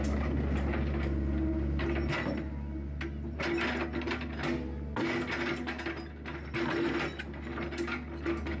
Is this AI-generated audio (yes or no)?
no